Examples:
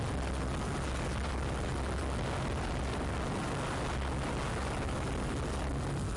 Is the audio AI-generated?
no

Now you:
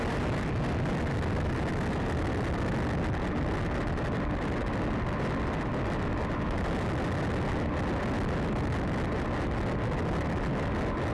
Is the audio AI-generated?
no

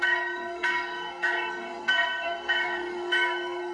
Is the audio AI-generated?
yes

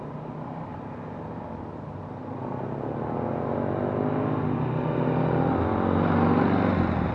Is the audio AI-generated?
no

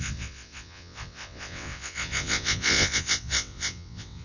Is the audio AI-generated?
yes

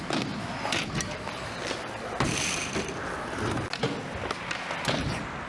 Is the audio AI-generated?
no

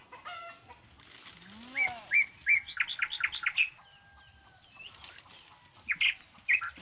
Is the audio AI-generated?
no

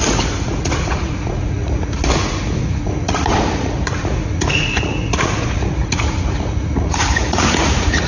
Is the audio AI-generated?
yes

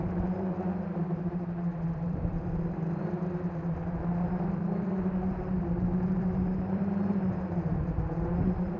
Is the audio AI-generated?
yes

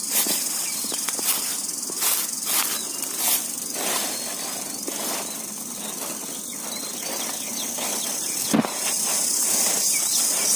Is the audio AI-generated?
no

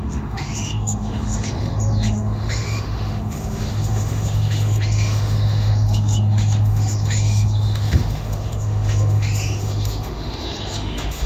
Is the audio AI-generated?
yes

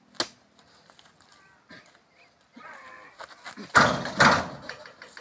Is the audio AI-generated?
no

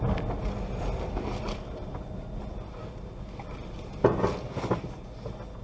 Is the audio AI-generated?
no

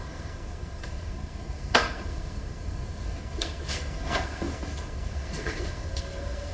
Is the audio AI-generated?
yes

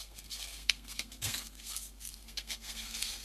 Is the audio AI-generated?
yes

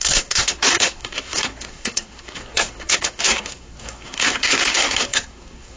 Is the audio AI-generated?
yes